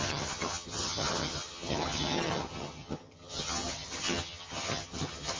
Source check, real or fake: fake